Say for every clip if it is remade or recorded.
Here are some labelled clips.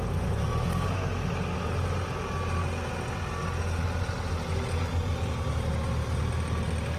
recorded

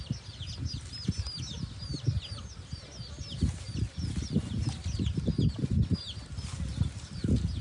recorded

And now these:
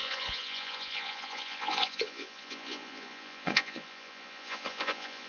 remade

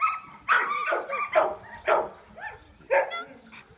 recorded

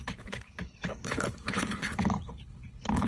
remade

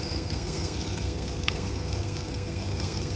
remade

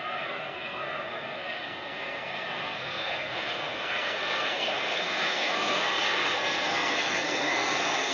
remade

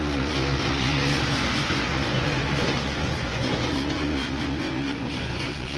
remade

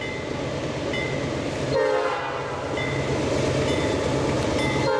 recorded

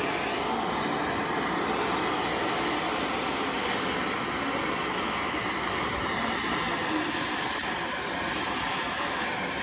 recorded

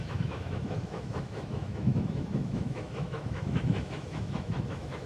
remade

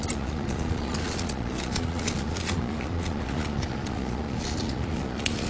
remade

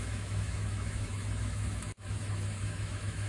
remade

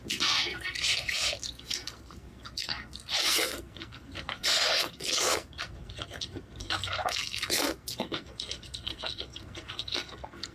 remade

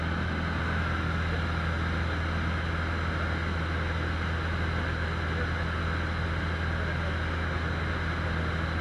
recorded